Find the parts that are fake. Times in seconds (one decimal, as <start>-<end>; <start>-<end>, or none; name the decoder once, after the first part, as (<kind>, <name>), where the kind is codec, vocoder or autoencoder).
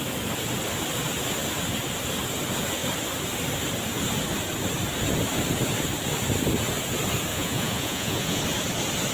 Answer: 7.3-8.4 (vocoder, Vocos)